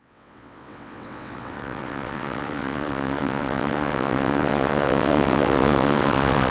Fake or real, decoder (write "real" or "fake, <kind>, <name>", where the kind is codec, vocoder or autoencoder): fake, vocoder, WaveNeXt